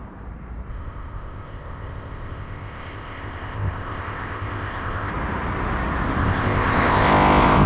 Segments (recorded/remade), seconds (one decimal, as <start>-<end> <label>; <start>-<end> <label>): 0.0-0.7 recorded; 0.7-5.1 remade; 5.1-6.2 recorded; 6.2-7.7 remade